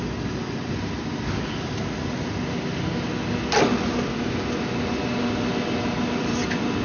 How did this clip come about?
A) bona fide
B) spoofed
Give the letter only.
A